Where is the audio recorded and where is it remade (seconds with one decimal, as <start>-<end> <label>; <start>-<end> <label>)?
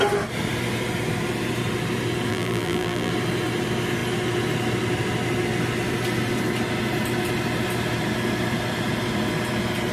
0.0-2.3 recorded; 2.3-3.1 remade; 3.1-9.9 recorded